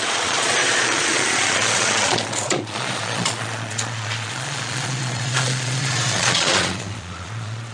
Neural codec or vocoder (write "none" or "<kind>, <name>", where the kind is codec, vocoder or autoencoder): vocoder, Vocos